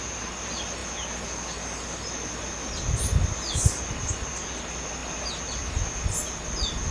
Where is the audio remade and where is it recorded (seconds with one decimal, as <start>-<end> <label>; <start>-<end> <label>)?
0.0-6.9 recorded